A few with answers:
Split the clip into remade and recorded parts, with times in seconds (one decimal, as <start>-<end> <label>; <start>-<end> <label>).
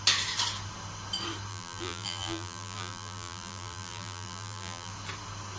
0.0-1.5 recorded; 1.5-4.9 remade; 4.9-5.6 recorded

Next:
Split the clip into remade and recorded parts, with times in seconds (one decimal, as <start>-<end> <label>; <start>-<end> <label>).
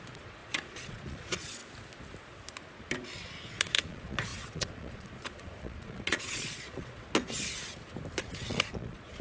0.0-1.6 remade; 1.6-3.5 recorded; 3.5-7.0 remade; 7.0-8.2 recorded; 8.2-9.2 remade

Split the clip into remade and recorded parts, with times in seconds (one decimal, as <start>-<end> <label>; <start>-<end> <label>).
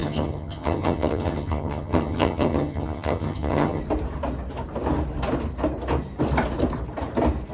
0.0-3.8 remade; 3.8-7.5 recorded